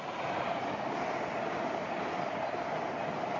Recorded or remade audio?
recorded